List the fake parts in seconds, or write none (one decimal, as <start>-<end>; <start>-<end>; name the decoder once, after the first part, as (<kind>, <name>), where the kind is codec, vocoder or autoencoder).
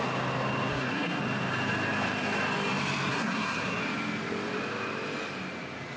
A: 0.7-1.2 (codec, SNAC); 3.1-3.8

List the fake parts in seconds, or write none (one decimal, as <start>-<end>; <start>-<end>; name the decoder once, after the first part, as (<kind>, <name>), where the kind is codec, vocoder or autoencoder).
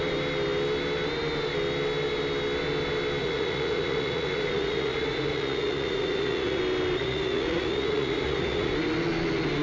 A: 3.2-6.6 (vocoder, Vocos); 7.0-8.7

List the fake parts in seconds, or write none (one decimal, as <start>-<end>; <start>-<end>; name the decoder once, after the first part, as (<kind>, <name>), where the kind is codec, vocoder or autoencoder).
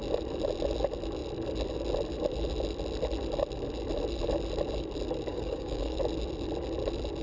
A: 5.3-6.0 (codec, DAC)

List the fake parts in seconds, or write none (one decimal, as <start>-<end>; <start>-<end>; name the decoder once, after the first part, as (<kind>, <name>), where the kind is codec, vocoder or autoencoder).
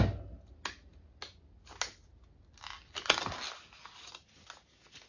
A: none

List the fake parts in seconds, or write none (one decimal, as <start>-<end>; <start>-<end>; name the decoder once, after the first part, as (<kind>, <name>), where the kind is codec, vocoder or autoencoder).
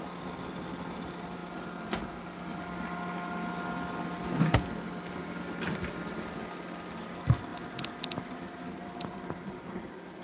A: none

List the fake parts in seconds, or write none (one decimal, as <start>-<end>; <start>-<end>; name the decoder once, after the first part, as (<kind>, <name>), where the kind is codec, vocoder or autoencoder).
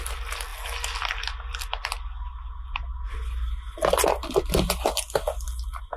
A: none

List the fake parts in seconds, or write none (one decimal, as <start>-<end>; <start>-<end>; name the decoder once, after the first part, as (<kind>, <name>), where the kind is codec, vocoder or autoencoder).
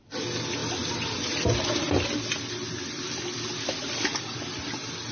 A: none